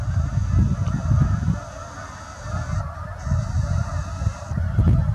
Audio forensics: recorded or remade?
recorded